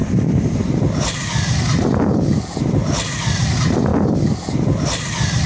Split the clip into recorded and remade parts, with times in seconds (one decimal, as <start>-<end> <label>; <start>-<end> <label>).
0.0-5.5 recorded